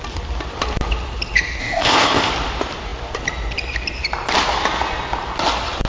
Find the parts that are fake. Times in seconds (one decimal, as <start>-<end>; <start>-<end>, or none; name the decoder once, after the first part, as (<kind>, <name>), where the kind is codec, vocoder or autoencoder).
1.6-2.3 (codec, ZipCodec)